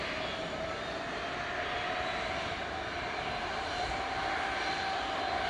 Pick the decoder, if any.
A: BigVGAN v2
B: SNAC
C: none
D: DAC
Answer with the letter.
C